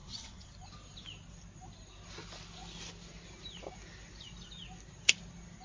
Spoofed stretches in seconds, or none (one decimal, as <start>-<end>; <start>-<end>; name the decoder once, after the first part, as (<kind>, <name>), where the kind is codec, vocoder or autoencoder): 0.0-0.5 (vocoder, WaveNeXt)